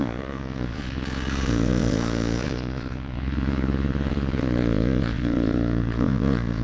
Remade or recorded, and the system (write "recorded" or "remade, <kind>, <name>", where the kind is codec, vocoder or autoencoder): remade, vocoder, Vocos